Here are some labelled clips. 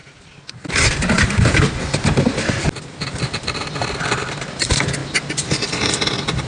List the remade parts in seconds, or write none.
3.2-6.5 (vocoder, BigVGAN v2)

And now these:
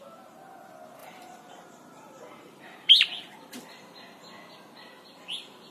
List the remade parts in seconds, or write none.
1.0-3.3 (vocoder, BigVGAN v2)